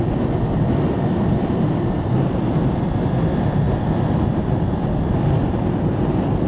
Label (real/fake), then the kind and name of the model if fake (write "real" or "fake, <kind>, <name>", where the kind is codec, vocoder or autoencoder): real